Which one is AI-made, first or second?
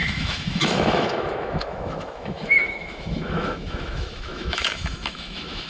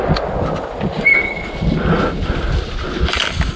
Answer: first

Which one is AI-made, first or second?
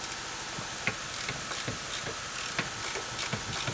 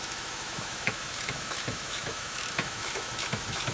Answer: second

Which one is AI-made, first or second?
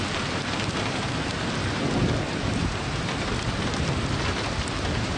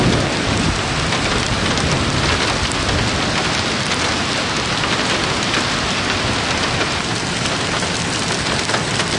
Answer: first